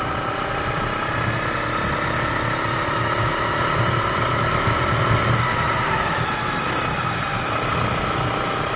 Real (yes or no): yes